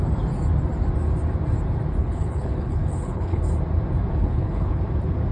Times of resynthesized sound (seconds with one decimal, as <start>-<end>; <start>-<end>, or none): 2.0-3.4; 4.1-4.8